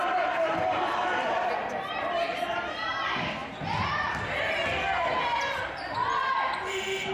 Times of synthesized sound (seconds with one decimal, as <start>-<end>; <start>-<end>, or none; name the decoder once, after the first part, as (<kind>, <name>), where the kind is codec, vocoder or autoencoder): 0.0-7.1 (vocoder, BigVGAN v2)